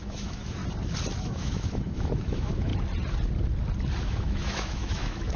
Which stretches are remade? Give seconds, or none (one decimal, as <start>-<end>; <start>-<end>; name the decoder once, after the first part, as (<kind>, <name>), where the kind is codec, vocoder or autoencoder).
0.0-0.6 (autoencoder, DAC-VAE); 1.2-2.7; 4.0-5.4

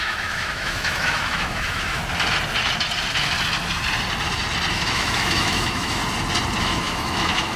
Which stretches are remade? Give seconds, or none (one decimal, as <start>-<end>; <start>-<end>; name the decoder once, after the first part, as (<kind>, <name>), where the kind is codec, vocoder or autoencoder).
0.0-2.0 (autoencoder, DAC-VAE); 4.7-6.0; 6.6-7.6

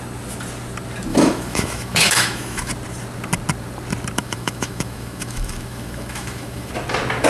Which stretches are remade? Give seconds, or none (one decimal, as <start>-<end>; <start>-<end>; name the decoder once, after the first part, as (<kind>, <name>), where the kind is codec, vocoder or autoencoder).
1.1-2.7 (autoencoder, DAC-VAE); 4.2-6.7

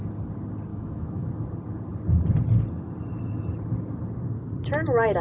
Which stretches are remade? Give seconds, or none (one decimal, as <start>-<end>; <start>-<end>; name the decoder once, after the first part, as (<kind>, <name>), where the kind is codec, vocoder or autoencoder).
0.7-1.3 (autoencoder, DAC-VAE)

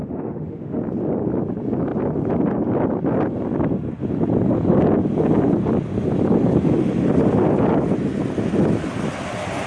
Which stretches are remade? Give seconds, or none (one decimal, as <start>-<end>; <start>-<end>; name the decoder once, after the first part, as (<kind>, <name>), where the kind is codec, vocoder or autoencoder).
0.0-0.8 (autoencoder, DAC-VAE)

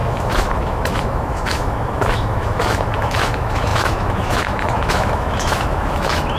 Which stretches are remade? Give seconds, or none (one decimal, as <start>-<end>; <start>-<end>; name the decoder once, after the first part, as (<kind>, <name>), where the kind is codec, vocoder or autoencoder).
0.0-6.4 (autoencoder, DAC-VAE)